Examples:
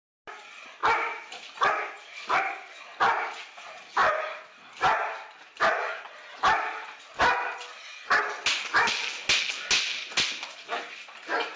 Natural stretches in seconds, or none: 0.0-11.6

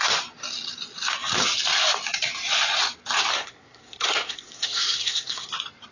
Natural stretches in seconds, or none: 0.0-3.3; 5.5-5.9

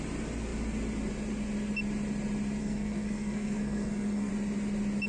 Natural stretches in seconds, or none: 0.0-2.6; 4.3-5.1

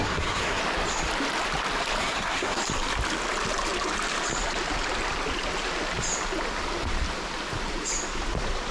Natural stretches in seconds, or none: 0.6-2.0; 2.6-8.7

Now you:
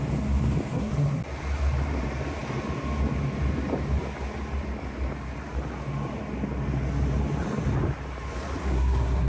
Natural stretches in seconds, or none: 0.0-0.7; 1.2-8.6

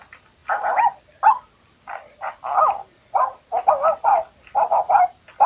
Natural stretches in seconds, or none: 0.0-5.5